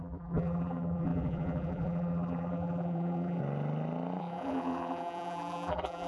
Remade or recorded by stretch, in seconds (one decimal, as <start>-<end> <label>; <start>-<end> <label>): 0.0-3.4 remade; 3.4-4.2 recorded; 4.2-6.1 remade